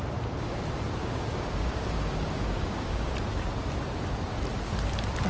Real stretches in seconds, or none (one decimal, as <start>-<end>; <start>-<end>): 0.0-1.0; 3.1-5.3